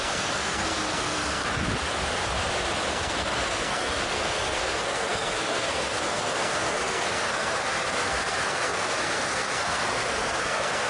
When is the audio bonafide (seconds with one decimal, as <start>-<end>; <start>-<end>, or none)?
1.4-2.9